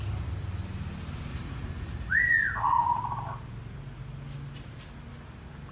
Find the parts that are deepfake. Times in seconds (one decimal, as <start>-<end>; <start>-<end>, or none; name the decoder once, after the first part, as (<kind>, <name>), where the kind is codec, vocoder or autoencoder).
1.3-2.8 (vocoder, Vocos)